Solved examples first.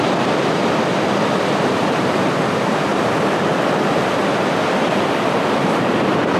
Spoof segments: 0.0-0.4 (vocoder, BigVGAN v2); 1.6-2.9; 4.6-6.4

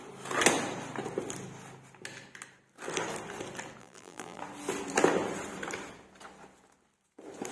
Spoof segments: 3.8-4.4 (vocoder, BigVGAN v2)

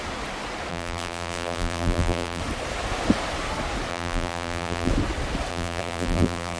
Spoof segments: 0.7-2.4 (vocoder, BigVGAN v2); 3.9-4.9; 5.5-6.6

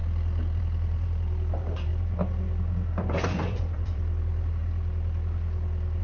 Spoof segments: 0.6-1.9 (vocoder, BigVGAN v2); 3.0-4.6

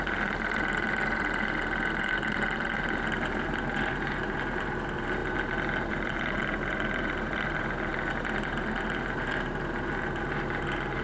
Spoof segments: 0.0-5.2 (vocoder, BigVGAN v2); 5.9-11.0

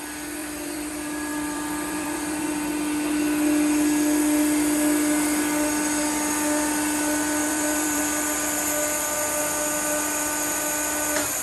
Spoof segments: 0.4-0.9 (vocoder, BigVGAN v2); 1.3-2.5; 7.4-8.0